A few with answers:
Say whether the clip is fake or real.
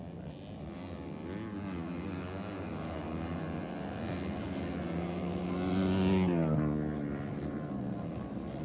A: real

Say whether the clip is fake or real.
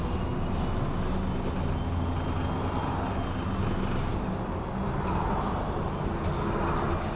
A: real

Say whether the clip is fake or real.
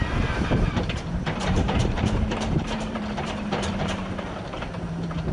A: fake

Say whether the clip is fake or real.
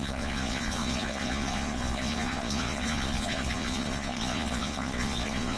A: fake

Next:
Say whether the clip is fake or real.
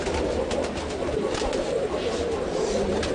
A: real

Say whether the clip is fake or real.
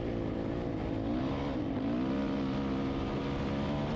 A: real